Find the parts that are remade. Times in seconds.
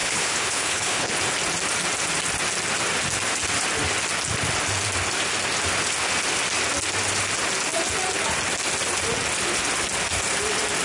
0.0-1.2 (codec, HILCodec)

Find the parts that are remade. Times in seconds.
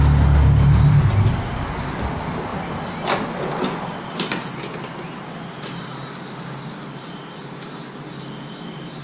none